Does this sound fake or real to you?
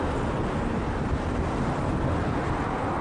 real